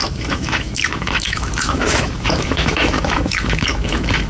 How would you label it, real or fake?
fake